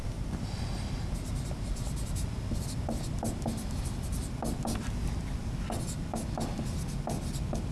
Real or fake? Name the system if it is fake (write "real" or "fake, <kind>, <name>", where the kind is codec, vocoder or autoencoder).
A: real